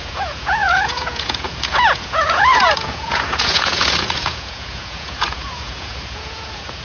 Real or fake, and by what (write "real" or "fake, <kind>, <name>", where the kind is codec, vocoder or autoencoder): fake, vocoder, Vocos